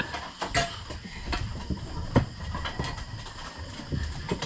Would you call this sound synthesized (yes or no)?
no